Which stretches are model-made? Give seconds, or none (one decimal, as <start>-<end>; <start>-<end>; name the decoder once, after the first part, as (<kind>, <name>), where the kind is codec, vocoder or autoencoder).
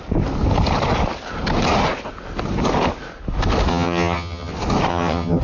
3.7-4.5 (vocoder, HiFi-GAN); 4.9-5.4